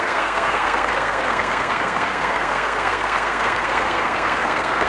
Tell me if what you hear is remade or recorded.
remade